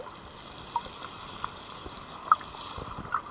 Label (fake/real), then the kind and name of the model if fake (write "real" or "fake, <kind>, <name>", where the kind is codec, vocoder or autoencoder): real